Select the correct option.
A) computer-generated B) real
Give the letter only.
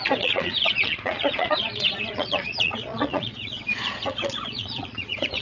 A